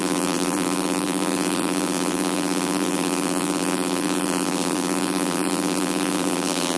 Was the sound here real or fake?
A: fake